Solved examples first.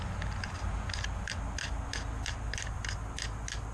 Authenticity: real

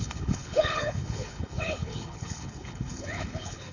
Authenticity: fake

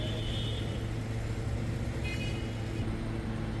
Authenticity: real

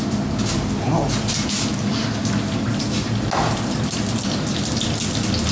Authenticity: real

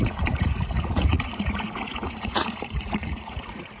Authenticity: fake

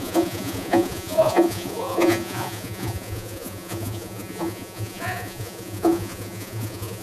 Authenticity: fake